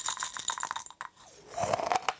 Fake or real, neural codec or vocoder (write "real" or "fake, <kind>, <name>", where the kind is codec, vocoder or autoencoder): real